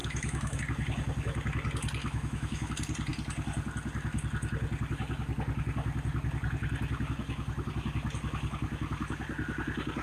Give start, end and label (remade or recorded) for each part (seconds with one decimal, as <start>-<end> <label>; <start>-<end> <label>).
0.0-0.6 remade; 0.6-2.0 recorded; 2.0-2.7 remade; 2.7-10.0 recorded